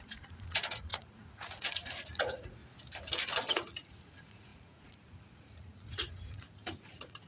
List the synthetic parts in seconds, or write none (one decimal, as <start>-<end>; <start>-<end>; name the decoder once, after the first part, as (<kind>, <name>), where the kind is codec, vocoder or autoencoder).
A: 0.0-2.6 (vocoder, Vocos); 3.5-7.3